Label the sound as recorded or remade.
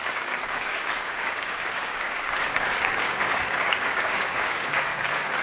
remade